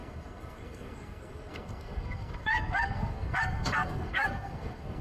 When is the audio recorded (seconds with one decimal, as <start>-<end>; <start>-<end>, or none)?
none